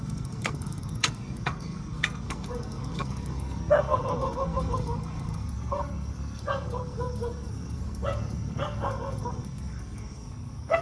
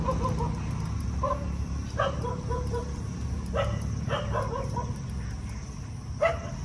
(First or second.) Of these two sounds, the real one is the second